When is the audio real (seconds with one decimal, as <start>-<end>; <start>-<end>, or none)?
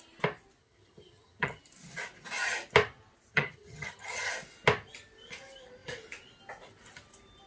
0.0-0.6; 1.6-3.3; 4.3-7.5